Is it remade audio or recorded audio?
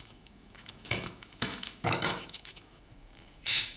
remade